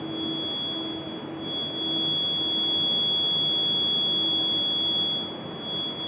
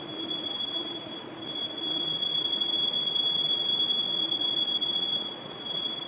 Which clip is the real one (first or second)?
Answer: first